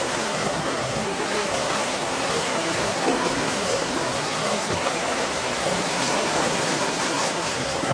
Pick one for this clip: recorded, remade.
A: remade